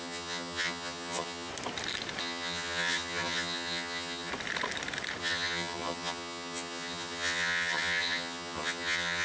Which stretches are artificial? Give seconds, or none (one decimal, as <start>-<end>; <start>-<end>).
0.0-1.5; 2.2-4.3; 5.2-9.2